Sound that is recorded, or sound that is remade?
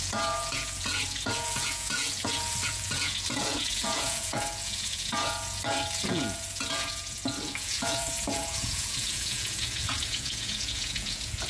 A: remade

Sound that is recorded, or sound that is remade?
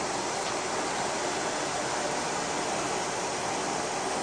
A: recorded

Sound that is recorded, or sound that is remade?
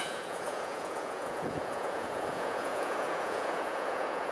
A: remade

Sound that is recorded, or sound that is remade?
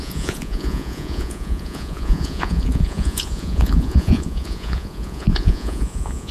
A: remade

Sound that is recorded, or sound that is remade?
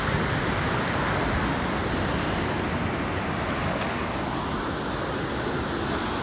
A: recorded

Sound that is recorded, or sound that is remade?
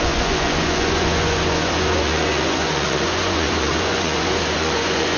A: remade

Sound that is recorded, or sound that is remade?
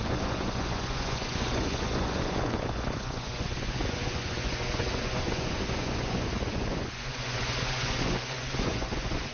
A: remade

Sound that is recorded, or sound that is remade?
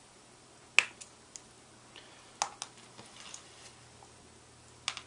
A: recorded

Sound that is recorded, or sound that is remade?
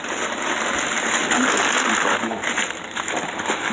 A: recorded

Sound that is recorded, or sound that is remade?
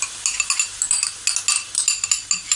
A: recorded